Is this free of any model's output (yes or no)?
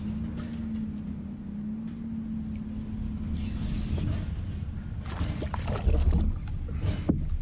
yes